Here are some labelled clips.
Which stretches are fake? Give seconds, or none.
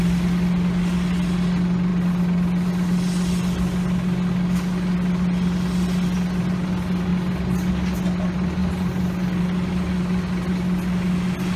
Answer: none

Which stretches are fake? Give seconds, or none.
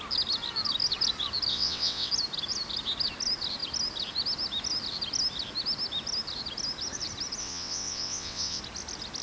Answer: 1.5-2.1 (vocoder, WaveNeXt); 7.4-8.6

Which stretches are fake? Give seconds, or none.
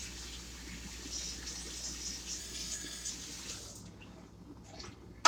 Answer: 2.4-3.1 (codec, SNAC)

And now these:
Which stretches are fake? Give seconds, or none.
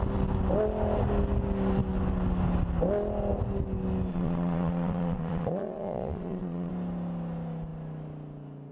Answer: 4.1-6.7 (vocoder, Vocos)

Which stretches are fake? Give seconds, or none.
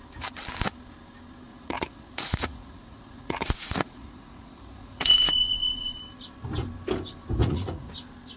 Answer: 1.5-6.0 (vocoder, Vocos); 7.4-7.9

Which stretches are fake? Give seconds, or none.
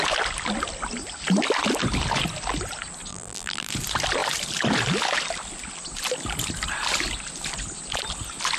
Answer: 3.1-3.7 (vocoder, BigVGAN v2)